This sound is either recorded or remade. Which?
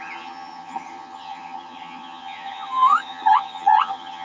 remade